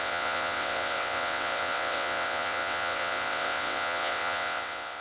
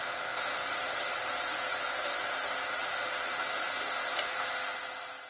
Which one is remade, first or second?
first